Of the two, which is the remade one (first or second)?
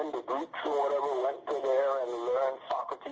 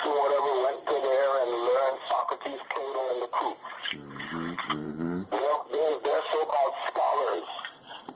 second